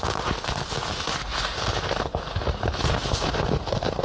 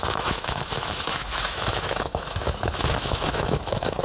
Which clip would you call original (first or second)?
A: first